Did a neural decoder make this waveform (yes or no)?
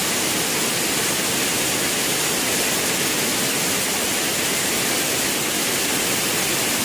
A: no